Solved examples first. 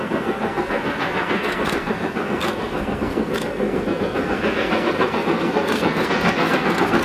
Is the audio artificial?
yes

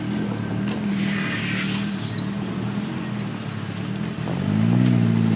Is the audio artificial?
no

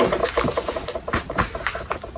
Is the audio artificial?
no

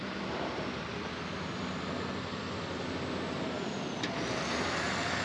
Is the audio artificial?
no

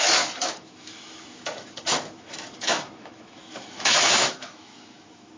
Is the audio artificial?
yes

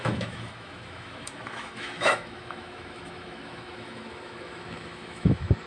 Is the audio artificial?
yes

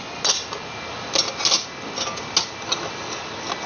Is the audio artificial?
no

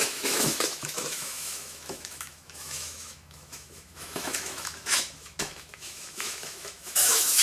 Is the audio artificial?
yes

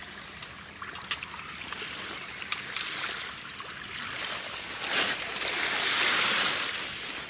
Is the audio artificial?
no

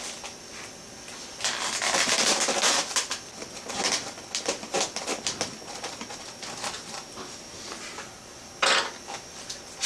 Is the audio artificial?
no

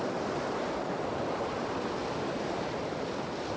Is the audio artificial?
no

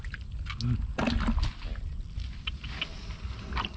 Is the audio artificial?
no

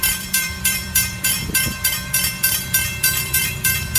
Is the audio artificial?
yes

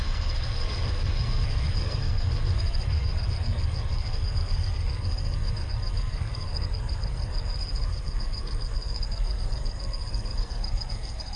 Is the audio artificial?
yes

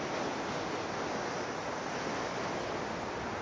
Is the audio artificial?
no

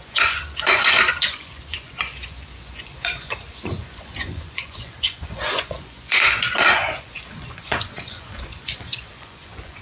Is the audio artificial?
yes